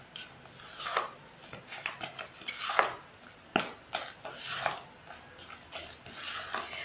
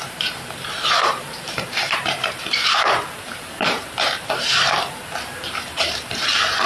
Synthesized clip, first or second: second